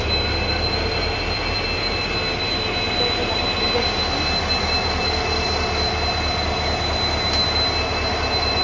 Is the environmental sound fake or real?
real